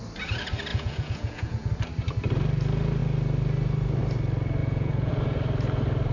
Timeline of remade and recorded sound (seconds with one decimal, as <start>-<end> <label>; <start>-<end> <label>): 0.0-0.7 recorded; 0.7-1.7 remade; 1.7-4.6 recorded; 4.6-5.1 remade; 5.1-6.1 recorded